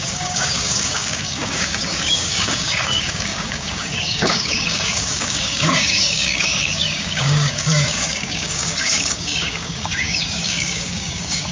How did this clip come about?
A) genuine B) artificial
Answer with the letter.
B